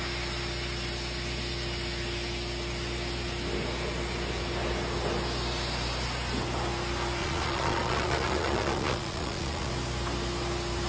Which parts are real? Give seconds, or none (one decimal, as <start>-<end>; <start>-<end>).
0.0-7.2; 9.7-10.9